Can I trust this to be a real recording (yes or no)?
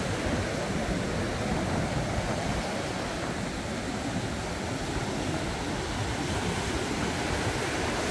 yes